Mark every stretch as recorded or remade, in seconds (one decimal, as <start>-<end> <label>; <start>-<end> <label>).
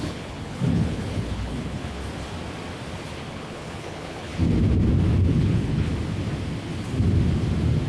0.0-2.0 remade; 2.0-3.3 recorded; 3.3-4.3 remade; 4.3-5.3 recorded; 5.3-5.9 remade; 5.9-7.9 recorded